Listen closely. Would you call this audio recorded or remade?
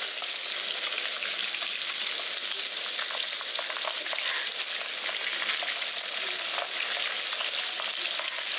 recorded